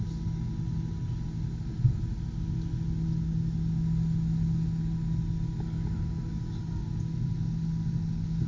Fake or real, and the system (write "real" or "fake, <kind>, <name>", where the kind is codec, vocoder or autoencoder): real